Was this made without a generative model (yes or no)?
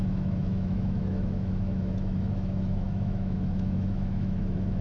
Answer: no